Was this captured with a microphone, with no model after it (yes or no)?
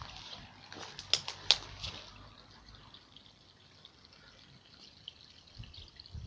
yes